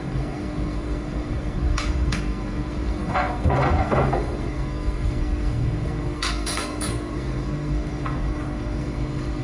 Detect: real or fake fake